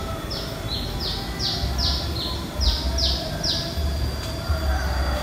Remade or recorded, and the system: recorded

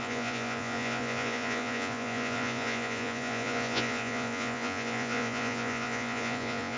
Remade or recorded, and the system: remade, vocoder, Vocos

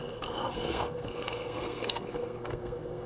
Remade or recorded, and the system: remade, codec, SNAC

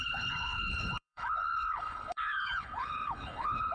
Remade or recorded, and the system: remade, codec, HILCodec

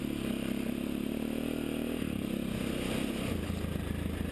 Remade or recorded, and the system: recorded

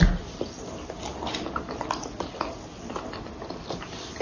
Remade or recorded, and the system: recorded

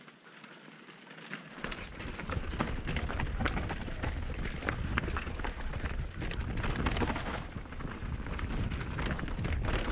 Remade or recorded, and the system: recorded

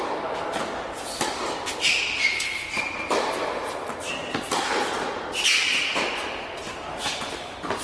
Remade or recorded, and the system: recorded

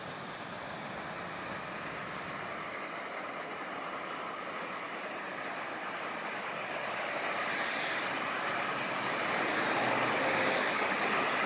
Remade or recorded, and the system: recorded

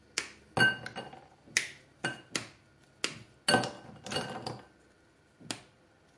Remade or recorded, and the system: recorded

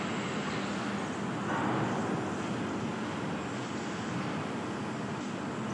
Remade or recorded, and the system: recorded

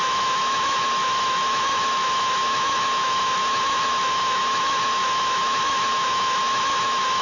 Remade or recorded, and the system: remade, autoencoder, DAC-VAE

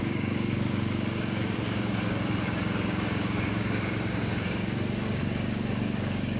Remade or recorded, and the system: remade, codec, DAC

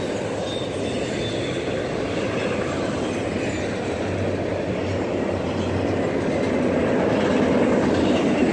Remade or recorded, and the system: recorded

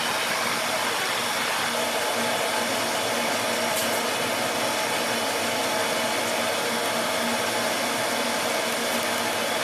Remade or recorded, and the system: recorded